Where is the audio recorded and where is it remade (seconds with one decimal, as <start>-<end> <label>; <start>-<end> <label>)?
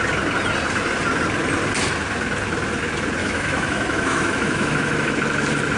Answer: 0.0-3.2 recorded; 3.2-5.1 remade; 5.1-5.8 recorded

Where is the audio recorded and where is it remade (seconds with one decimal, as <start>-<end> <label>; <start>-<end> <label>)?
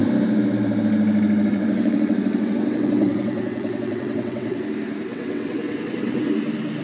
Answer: 0.0-1.5 recorded; 1.5-4.6 remade; 4.6-5.1 recorded; 5.1-6.3 remade; 6.3-6.8 recorded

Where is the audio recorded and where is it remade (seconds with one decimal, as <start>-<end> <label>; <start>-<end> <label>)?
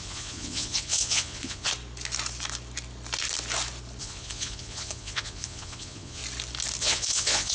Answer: 0.0-1.7 remade; 1.7-4.0 recorded; 4.0-6.2 remade; 6.2-6.8 recorded; 6.8-7.5 remade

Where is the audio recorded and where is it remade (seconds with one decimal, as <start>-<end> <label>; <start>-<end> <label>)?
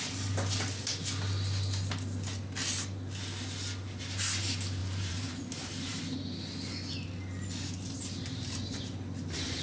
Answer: 0.0-4.8 recorded; 4.8-6.0 remade; 6.0-9.6 recorded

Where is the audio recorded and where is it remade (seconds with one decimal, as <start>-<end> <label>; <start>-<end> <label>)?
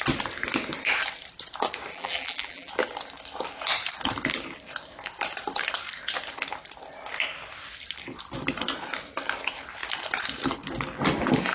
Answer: 0.0-1.9 recorded; 1.9-2.7 remade; 2.7-11.5 recorded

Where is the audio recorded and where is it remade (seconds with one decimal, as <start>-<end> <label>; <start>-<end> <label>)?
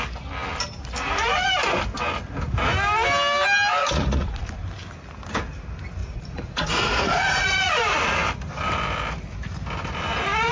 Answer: 0.0-3.8 recorded; 3.8-4.4 remade; 4.4-6.0 recorded; 6.0-7.8 remade; 7.8-10.5 recorded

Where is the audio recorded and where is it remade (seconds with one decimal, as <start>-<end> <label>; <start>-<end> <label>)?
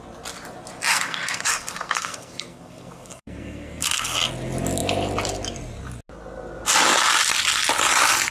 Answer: 0.0-0.9 recorded; 0.9-4.3 remade; 4.3-8.3 recorded